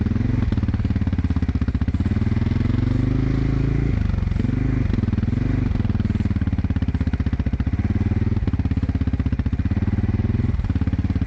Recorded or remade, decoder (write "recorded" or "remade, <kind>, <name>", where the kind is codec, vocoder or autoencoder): recorded